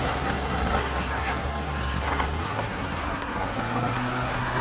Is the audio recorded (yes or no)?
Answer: no